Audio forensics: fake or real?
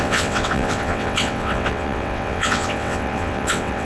fake